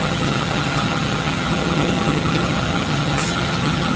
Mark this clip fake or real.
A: fake